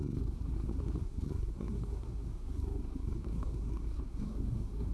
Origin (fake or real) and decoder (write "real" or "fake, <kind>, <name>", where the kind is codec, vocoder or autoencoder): fake, codec, SNAC